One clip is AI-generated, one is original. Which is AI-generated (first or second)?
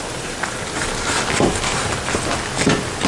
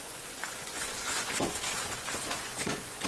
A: second